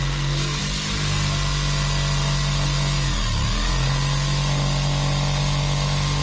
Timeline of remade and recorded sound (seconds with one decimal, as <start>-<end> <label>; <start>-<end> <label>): 0.0-0.6 remade; 0.6-6.2 recorded